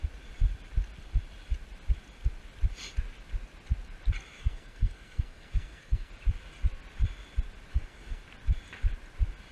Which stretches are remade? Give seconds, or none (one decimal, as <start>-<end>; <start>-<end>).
4.3-6.1; 7.7-8.2